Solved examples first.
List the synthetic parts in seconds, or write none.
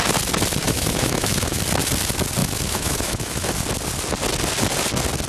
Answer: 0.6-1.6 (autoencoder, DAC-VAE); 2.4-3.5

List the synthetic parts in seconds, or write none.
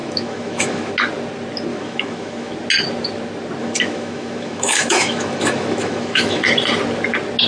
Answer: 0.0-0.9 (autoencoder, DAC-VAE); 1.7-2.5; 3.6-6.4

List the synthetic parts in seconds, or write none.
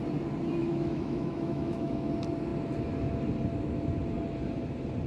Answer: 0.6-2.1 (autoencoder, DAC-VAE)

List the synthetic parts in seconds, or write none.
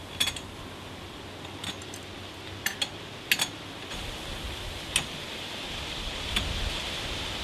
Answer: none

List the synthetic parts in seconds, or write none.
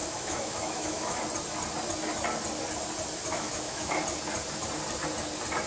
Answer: 0.0-1.2 (autoencoder, DAC-VAE); 3.3-3.9